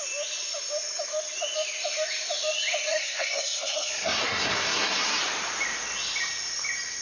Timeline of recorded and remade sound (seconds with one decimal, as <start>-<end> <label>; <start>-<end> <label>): 0.0-2.9 recorded; 2.9-5.2 remade; 5.2-7.0 recorded

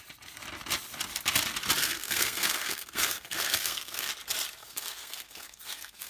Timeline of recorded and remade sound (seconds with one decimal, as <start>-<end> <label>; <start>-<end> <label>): 0.0-1.8 recorded; 1.8-4.1 remade; 4.1-4.6 recorded; 4.6-6.1 remade

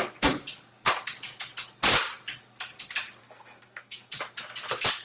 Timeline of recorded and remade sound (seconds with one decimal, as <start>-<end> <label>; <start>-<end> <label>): 0.0-3.2 recorded; 3.2-4.1 remade; 4.1-5.0 recorded

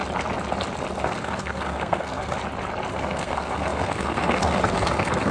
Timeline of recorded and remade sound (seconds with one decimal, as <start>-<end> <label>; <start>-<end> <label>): 0.0-1.0 recorded; 1.0-2.4 remade; 2.4-2.9 recorded; 2.9-5.3 remade

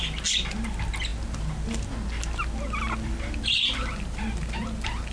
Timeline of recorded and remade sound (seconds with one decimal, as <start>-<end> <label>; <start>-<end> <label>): 0.0-5.1 recorded

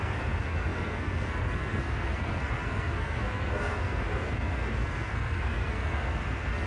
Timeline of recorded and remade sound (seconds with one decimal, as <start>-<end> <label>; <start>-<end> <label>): 0.0-6.7 remade

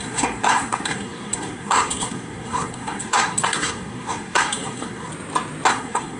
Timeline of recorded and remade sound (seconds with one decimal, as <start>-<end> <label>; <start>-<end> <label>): 0.0-5.1 remade; 5.1-5.7 recorded; 5.7-6.2 remade